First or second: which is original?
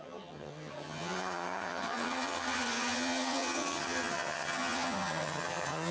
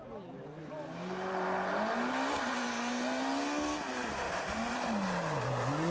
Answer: second